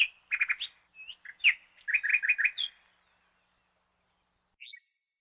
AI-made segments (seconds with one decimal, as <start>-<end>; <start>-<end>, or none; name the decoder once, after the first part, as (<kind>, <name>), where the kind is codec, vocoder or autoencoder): none